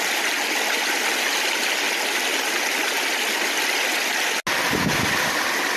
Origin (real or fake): real